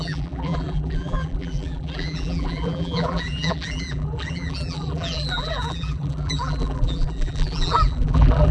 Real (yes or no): no